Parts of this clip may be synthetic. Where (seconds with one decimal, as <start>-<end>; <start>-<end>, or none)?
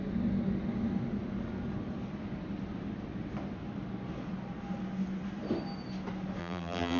6.4-7.0